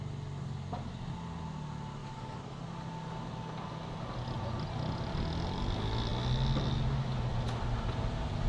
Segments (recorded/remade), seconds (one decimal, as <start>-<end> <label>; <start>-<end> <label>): 0.0-2.0 recorded; 2.0-2.6 remade; 2.6-8.5 recorded